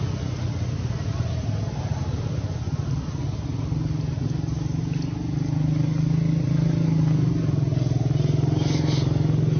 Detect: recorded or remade recorded